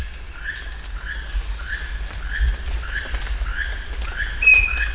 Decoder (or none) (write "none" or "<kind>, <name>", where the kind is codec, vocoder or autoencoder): none